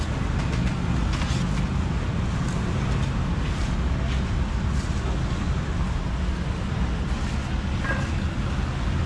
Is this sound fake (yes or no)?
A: no